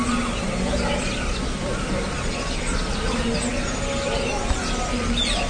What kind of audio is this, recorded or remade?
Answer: recorded